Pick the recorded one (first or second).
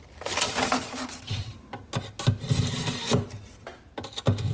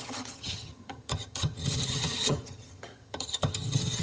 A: first